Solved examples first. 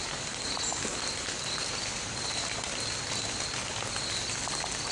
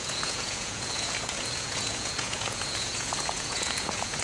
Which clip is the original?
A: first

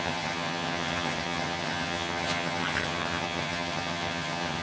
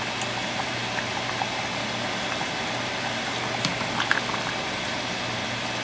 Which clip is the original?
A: second